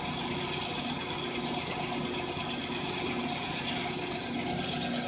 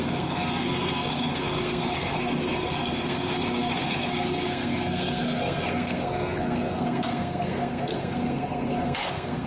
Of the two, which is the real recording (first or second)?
first